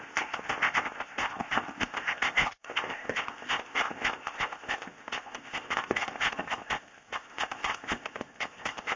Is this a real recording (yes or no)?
no